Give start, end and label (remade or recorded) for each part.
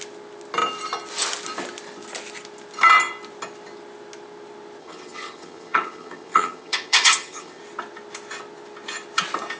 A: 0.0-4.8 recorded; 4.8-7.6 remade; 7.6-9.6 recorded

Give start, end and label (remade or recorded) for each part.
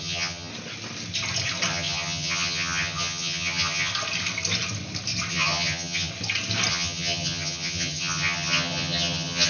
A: 0.0-0.5 remade; 0.5-1.7 recorded; 1.7-3.9 remade; 3.9-5.3 recorded; 5.3-6.1 remade; 6.1-6.7 recorded; 6.7-9.5 remade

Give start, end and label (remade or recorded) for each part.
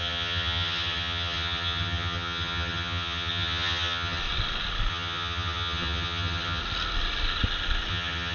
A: 0.0-4.2 remade; 4.2-4.9 recorded; 4.9-6.6 remade; 6.6-7.9 recorded; 7.9-8.3 remade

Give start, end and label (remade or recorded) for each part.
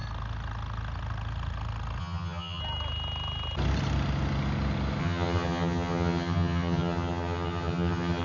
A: 0.0-2.0 recorded; 2.0-2.6 remade; 2.6-5.0 recorded; 5.0-8.2 remade